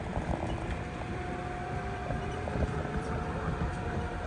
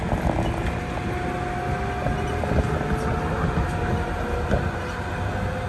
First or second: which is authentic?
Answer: second